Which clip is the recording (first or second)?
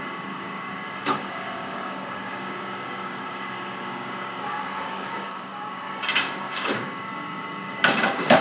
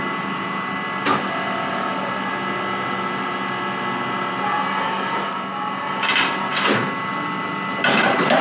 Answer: second